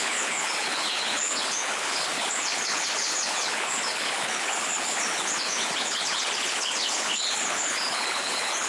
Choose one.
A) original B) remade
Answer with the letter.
B